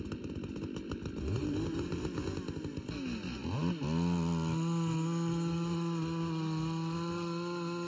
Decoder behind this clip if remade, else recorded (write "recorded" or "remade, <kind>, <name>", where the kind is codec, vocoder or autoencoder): recorded